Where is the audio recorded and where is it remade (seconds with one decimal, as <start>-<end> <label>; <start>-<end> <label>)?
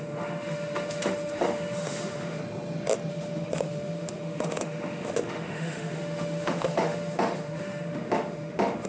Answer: 0.0-2.4 remade; 2.4-3.1 recorded; 3.1-8.9 remade